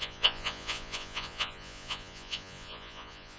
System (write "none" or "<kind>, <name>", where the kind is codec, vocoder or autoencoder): vocoder, Vocos